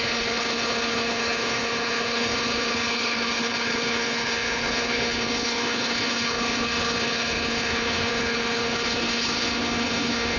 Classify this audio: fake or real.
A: fake